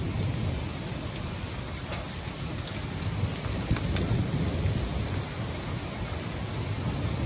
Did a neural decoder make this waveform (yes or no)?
no